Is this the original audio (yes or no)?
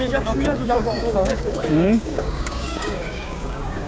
no